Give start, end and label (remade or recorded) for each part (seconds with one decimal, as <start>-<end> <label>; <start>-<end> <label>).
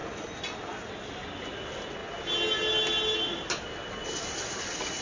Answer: 0.0-5.0 recorded